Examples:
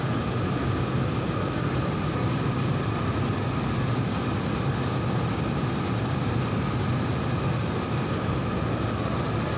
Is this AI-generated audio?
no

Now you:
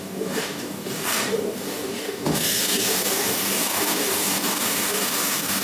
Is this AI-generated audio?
yes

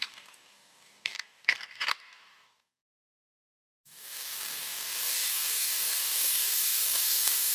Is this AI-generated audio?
yes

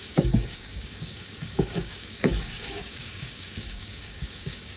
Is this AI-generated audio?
yes